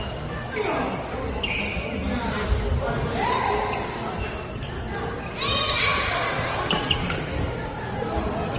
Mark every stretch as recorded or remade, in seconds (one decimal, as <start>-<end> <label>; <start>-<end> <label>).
0.0-8.6 recorded